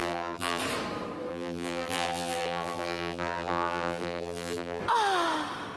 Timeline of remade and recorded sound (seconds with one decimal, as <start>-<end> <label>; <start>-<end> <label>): 0.0-0.6 remade; 0.6-1.3 recorded; 1.3-4.8 remade; 4.8-5.8 recorded